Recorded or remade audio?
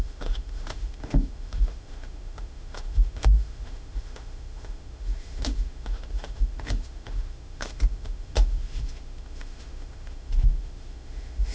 remade